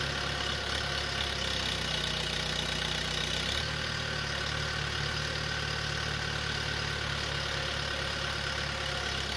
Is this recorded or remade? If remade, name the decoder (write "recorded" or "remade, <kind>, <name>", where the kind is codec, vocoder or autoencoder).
recorded